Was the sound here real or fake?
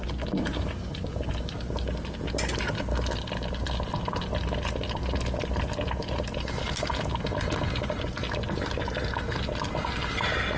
real